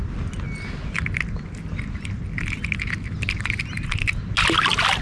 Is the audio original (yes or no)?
yes